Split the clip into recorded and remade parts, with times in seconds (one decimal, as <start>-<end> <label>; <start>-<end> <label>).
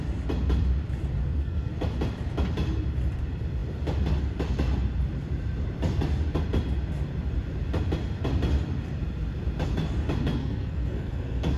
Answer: 0.0-1.2 recorded; 1.2-1.7 remade; 1.7-10.4 recorded; 10.4-11.6 remade